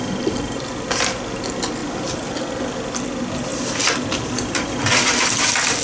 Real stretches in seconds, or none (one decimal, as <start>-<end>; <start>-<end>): 0.0-1.8; 2.5-3.5; 4.7-5.8